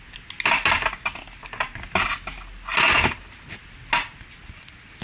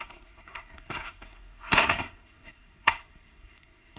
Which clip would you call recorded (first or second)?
first